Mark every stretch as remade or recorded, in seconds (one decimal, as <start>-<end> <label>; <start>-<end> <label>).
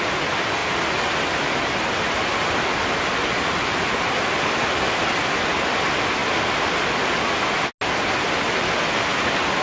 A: 0.0-9.6 recorded